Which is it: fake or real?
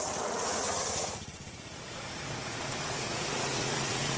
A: fake